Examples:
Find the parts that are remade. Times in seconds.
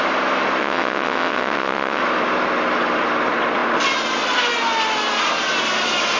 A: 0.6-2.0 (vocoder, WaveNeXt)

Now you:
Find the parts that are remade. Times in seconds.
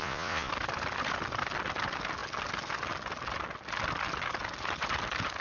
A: 0.0-0.5 (vocoder, Vocos)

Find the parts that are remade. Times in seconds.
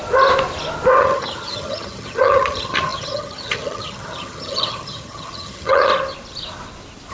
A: 1.0-5.9 (vocoder, HiFi-GAN)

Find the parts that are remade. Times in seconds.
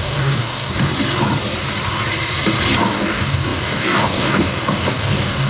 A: 0.0-0.9 (codec, DAC); 2.8-5.5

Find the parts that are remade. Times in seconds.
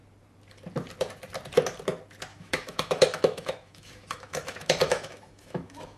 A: 2.3-6.0 (autoencoder, DAC-VAE)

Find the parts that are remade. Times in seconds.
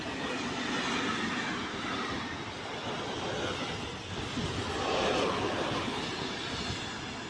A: none